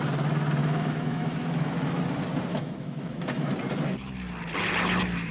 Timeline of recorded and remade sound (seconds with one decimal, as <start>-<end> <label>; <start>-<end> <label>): 0.0-0.6 recorded; 0.6-1.7 remade; 1.7-2.5 recorded; 2.5-3.5 remade; 3.5-5.3 recorded